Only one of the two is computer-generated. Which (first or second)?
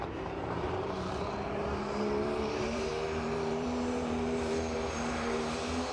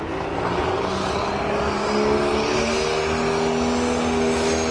first